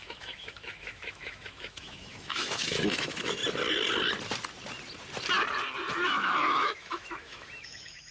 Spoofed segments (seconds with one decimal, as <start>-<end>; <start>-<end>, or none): 0.0-3.4; 5.9-8.1